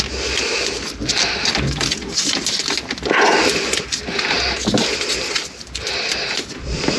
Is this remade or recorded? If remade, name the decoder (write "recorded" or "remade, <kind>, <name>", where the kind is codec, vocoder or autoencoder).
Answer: recorded